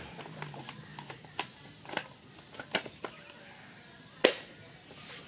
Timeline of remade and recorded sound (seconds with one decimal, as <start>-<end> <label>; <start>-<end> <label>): 0.0-0.9 recorded; 0.9-4.1 remade; 4.1-5.3 recorded